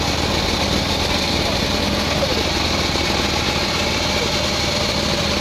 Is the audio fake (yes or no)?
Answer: no